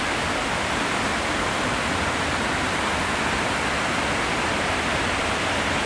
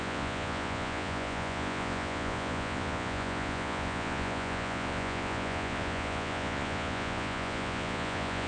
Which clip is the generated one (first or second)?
second